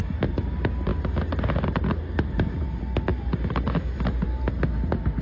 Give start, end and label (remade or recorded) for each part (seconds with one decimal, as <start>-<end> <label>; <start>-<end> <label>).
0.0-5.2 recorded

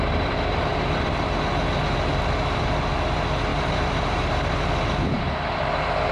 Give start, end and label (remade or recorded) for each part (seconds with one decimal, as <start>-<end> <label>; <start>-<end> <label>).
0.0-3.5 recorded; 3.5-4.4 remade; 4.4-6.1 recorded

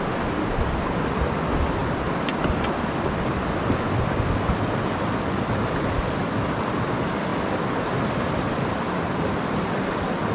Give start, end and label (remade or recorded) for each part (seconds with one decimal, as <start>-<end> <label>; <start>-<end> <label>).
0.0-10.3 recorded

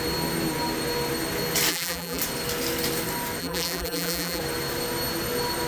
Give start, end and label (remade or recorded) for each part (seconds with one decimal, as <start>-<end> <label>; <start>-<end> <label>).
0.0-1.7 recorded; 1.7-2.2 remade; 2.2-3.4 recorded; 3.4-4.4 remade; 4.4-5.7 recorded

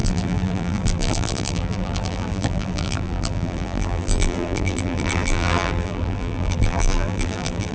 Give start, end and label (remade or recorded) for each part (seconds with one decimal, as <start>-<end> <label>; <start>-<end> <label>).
0.0-7.7 remade

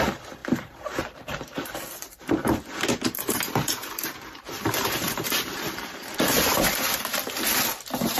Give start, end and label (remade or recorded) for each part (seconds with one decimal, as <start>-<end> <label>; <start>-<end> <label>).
0.0-7.1 remade; 7.1-8.2 recorded

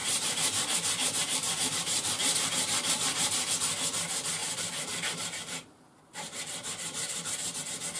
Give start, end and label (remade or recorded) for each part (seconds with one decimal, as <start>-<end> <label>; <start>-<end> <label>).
0.0-3.5 remade; 3.5-4.4 recorded; 4.4-7.6 remade; 7.6-8.0 recorded